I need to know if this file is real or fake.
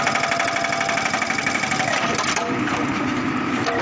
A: real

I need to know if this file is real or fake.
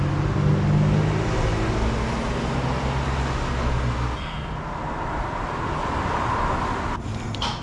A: real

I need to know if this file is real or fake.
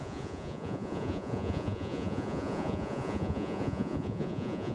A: fake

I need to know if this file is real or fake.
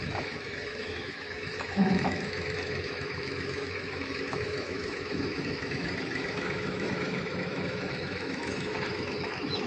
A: fake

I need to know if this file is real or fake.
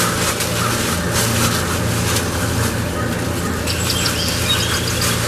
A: real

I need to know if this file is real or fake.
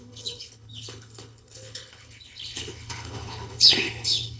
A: fake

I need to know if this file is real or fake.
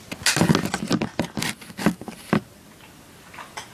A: real